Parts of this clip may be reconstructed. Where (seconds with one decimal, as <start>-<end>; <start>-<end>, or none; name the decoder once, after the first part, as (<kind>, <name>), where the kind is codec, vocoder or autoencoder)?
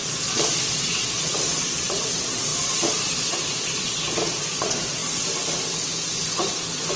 0.0-5.0 (vocoder, Vocos)